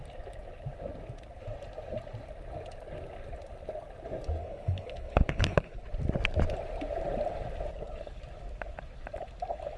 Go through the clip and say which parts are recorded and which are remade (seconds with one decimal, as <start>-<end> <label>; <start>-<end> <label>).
0.0-4.4 recorded; 4.4-5.8 remade; 5.8-9.8 recorded